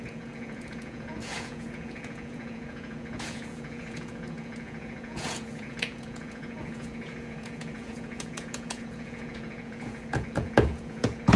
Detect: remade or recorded remade